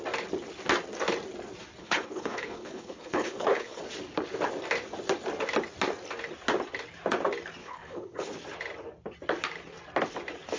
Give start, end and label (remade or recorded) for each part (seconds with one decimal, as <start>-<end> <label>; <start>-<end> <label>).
0.0-1.8 recorded; 1.8-3.8 remade; 3.8-7.6 recorded; 7.6-8.3 remade; 8.3-10.6 recorded